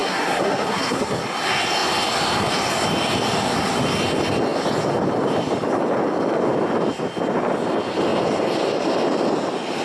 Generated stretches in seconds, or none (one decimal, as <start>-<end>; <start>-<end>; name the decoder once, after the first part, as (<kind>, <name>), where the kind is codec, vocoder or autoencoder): 0.0-1.2 (codec, SNAC)